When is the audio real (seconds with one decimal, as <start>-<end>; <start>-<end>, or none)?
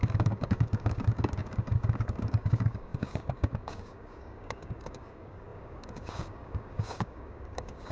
none